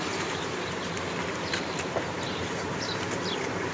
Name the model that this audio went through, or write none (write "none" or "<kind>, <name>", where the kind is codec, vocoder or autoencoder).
vocoder, BigVGAN v2